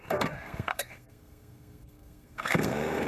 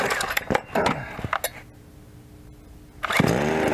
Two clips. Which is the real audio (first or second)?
second